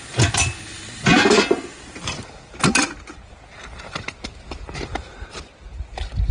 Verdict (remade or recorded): recorded